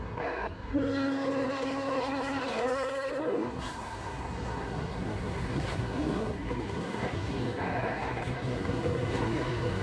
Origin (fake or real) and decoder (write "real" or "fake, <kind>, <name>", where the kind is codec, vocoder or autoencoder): fake, codec, SNAC